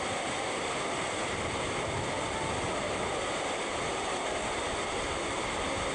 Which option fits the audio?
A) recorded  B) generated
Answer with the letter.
A